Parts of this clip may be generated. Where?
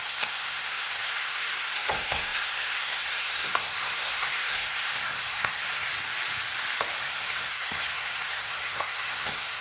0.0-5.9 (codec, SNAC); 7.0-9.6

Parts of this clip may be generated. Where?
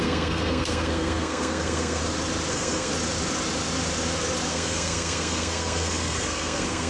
0.0-2.0 (codec, SNAC); 2.5-2.9; 4.5-6.9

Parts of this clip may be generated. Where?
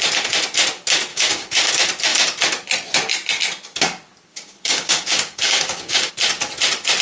1.1-1.7 (codec, DAC); 4.3-6.1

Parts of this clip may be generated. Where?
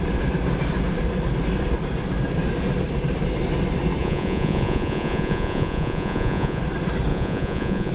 4.0-6.6 (vocoder, Vocos); 7.1-7.9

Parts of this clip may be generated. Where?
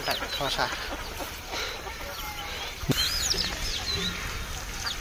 1.2-4.2 (vocoder, BigVGAN v2)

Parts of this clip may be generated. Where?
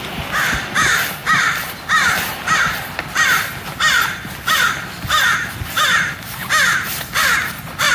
none